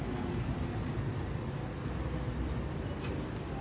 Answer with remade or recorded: recorded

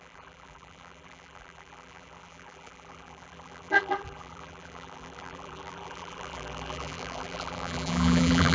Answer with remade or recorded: remade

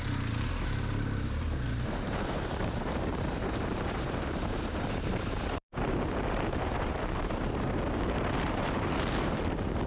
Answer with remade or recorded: remade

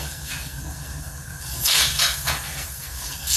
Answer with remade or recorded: remade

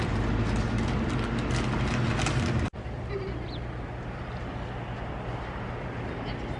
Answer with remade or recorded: recorded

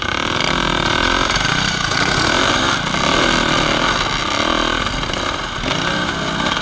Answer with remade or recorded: recorded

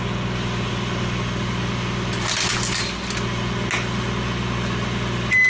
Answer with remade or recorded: recorded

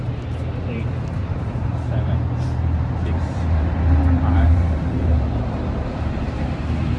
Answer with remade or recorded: remade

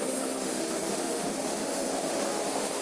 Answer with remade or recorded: remade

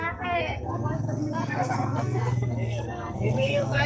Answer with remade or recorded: remade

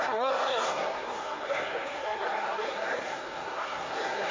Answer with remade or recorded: remade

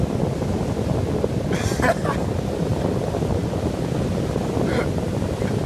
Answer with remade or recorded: recorded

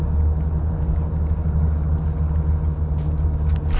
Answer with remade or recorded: recorded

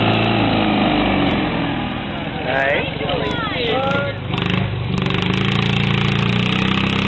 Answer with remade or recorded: recorded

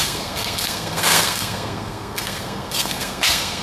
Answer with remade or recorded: remade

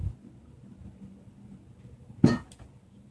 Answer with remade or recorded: recorded